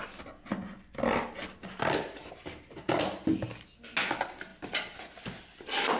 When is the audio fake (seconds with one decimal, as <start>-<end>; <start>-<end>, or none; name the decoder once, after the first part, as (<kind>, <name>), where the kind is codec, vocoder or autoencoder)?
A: none